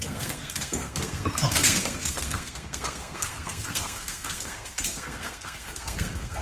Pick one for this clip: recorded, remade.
remade